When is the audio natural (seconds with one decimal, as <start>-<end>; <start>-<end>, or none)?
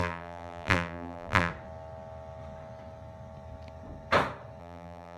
1.5-4.6